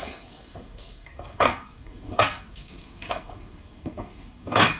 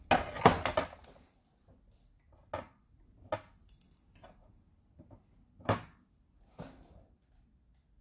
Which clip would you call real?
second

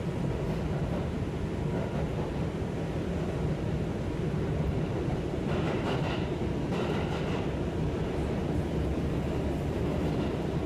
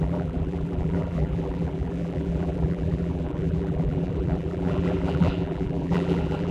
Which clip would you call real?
first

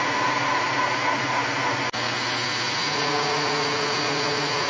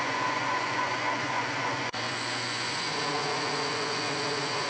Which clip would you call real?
first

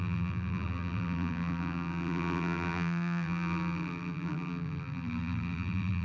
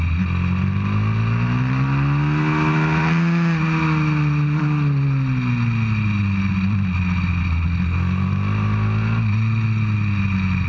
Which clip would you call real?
second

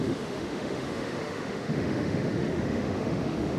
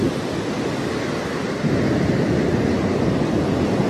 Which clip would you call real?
second